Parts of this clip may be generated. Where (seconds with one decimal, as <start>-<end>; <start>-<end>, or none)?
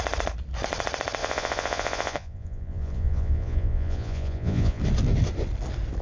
1.2-4.8